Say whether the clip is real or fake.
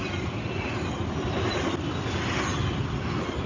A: real